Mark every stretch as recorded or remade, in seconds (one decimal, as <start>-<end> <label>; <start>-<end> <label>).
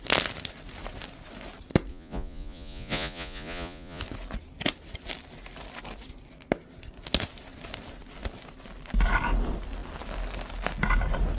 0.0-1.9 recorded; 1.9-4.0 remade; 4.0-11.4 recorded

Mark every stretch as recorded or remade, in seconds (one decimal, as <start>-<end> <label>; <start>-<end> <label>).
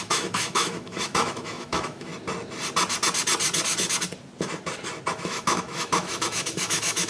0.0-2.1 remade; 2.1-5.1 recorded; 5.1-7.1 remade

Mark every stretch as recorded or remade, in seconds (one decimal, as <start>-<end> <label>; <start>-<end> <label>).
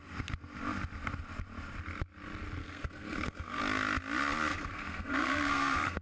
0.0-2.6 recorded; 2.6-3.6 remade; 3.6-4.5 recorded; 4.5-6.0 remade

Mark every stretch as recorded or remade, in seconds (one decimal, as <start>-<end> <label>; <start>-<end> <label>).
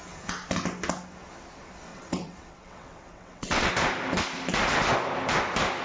0.0-1.9 recorded; 1.9-3.7 remade; 3.7-5.8 recorded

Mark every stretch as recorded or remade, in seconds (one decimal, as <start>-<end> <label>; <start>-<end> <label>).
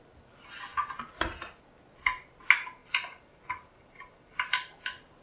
0.0-2.8 recorded; 2.8-4.8 remade; 4.8-5.2 recorded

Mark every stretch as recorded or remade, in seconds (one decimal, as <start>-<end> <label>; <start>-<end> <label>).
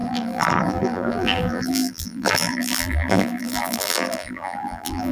0.0-5.1 remade